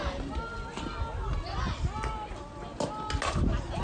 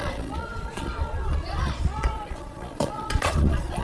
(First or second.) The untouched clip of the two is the first